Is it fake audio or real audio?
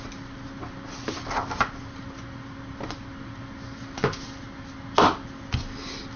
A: real